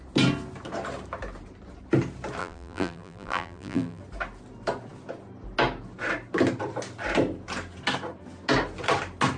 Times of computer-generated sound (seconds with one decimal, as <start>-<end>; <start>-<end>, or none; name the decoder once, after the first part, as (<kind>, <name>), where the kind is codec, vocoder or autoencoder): 2.4-4.0 (vocoder, BigVGAN v2)